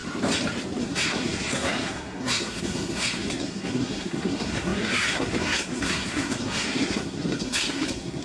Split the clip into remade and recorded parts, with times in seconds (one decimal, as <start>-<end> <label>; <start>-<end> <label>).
0.0-0.8 recorded; 0.8-8.2 remade

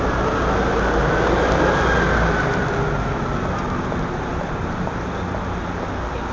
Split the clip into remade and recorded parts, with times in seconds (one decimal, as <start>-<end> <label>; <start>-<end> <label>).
0.0-4.3 recorded; 4.3-4.9 remade; 4.9-6.3 recorded

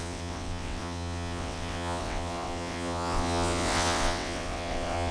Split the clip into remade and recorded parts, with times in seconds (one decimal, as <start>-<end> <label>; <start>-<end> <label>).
0.0-5.1 remade

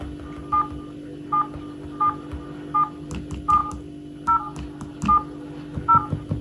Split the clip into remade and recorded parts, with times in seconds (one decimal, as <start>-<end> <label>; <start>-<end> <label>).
0.0-6.4 recorded

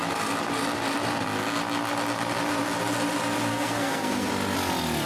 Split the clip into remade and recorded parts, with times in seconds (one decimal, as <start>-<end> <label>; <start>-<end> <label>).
0.0-3.5 recorded; 3.5-4.3 remade; 4.3-5.1 recorded